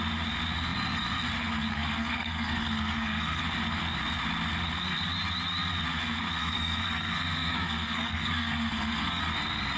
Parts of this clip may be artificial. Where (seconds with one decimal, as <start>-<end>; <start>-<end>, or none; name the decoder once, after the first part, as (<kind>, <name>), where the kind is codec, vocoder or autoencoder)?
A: 1.7-3.4 (codec, SNAC); 6.4-9.2